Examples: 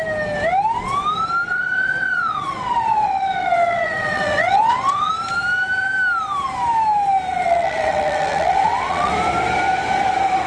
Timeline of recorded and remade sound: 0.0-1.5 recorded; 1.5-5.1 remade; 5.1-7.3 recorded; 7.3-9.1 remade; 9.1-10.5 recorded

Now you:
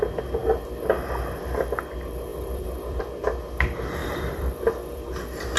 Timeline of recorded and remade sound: 0.0-2.3 recorded; 2.3-3.0 remade; 3.0-4.0 recorded; 4.0-5.1 remade; 5.1-5.6 recorded